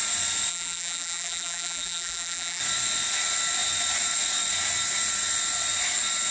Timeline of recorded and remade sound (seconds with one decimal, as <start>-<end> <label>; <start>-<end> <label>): 0.0-0.5 recorded; 0.5-2.6 remade; 2.6-6.3 recorded